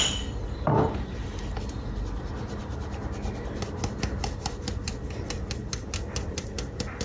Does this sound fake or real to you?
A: real